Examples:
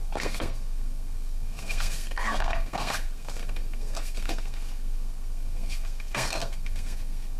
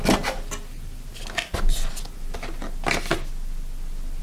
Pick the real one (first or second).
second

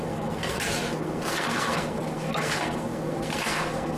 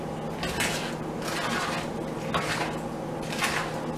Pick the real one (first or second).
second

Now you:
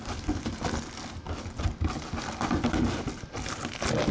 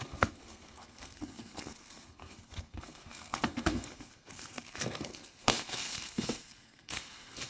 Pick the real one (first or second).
first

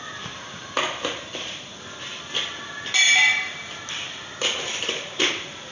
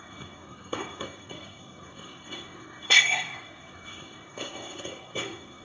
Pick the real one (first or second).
first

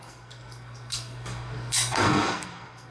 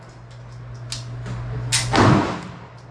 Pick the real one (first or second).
second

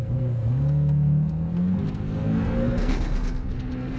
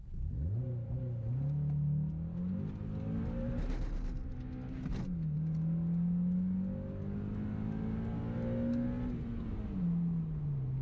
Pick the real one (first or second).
second